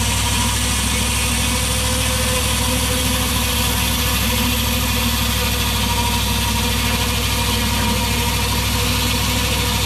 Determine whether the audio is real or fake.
real